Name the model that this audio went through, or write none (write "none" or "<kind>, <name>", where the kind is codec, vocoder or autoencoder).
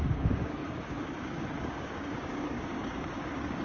codec, DAC